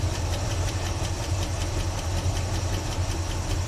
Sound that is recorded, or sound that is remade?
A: recorded